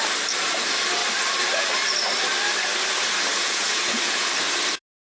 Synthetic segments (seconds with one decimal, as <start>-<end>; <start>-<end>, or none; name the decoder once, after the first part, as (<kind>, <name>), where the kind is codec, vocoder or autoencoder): 3.3-4.3 (vocoder, Vocos)